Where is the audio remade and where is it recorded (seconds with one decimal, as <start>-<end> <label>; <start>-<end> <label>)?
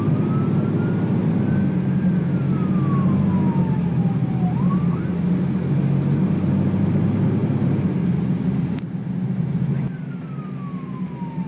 0.0-11.5 recorded